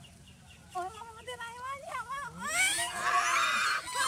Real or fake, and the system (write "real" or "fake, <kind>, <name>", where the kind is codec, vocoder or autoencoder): real